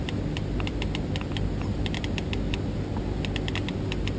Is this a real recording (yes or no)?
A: yes